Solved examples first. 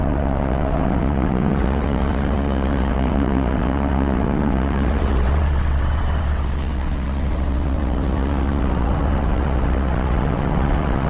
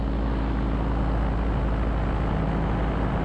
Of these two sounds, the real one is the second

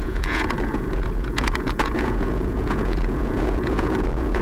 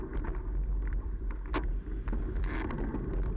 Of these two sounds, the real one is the second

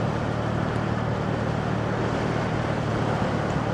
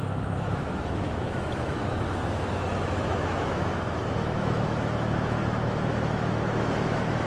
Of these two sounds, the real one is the first